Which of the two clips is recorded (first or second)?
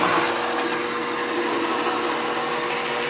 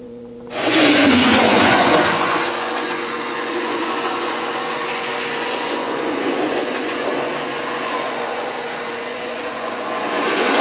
first